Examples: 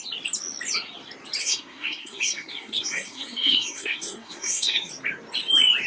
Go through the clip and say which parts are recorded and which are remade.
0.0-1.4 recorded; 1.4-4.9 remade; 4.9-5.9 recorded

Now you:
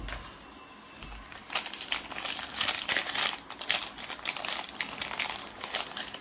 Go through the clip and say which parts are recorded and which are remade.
0.0-6.2 recorded